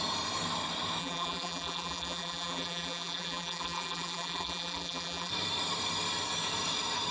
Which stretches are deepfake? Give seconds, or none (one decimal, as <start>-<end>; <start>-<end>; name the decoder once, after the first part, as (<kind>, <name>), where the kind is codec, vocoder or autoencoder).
1.0-5.3 (vocoder, BigVGAN v2)